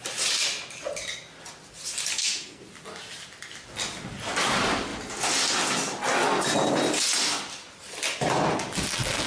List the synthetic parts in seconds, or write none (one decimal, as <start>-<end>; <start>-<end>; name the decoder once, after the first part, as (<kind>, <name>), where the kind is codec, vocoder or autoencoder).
2.1-2.6 (codec, SNAC)